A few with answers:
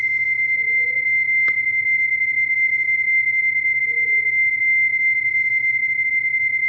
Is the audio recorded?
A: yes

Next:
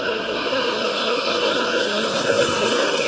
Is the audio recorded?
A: no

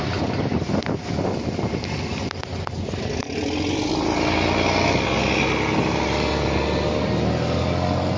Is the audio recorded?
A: yes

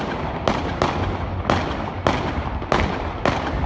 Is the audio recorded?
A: yes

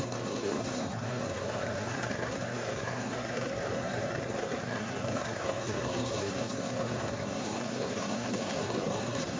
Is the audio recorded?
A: no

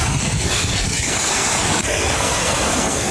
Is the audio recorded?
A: no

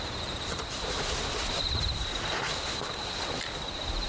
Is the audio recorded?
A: yes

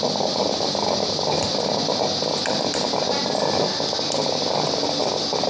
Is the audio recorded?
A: yes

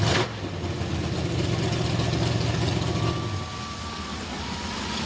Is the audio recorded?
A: yes